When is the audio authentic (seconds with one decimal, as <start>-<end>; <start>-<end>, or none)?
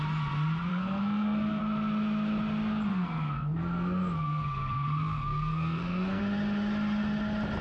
0.0-0.7; 1.6-2.9; 6.2-7.6